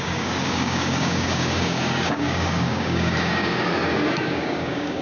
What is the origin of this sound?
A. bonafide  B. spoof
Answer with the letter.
B